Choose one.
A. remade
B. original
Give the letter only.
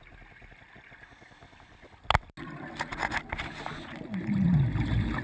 B